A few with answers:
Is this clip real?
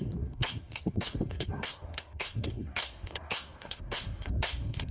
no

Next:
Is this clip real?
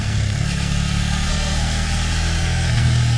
no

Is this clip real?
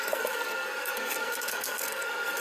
no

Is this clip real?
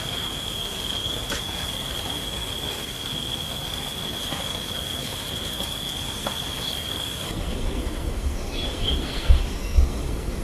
no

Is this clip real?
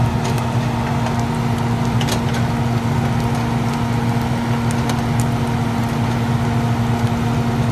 yes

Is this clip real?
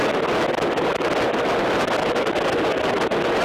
yes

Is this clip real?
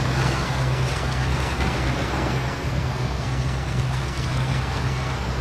no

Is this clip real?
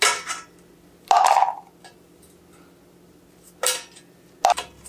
yes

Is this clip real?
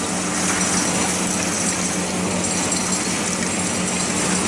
yes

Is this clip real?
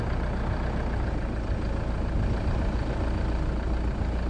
yes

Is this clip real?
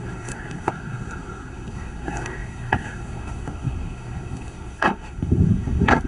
no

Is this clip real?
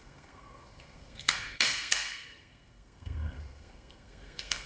no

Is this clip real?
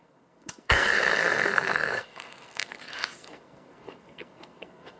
no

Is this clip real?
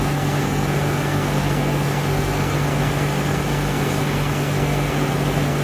no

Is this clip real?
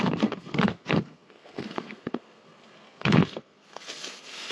no